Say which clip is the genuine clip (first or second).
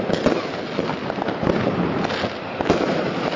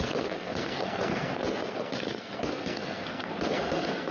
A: first